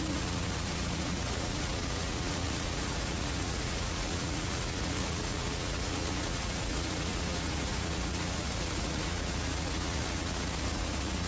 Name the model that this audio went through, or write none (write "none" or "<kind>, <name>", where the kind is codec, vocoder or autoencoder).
vocoder, Vocos